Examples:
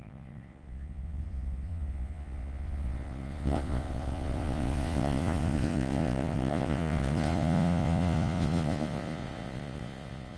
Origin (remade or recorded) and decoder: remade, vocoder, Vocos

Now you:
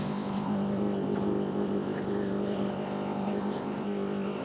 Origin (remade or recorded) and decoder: remade, codec, ZipCodec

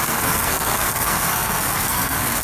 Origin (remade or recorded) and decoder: remade, codec, SNAC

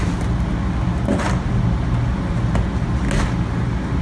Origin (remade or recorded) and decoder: recorded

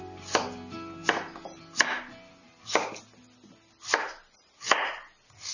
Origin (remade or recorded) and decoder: recorded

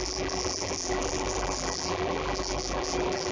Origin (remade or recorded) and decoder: remade, vocoder, BigVGAN v2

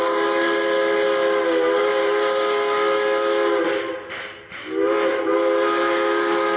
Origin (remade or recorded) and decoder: recorded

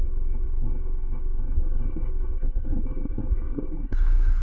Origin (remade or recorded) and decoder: remade, codec, SNAC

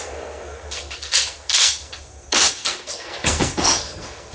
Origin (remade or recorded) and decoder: remade, codec, SNAC